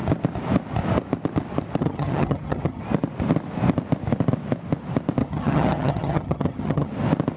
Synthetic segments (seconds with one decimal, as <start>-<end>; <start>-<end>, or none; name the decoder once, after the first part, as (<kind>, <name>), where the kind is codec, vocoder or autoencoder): 1.8-2.8 (vocoder, HiFi-GAN); 5.2-6.9